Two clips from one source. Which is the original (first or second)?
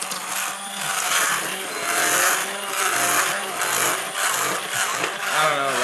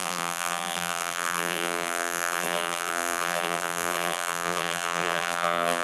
first